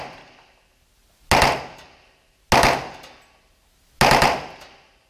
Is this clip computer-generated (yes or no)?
no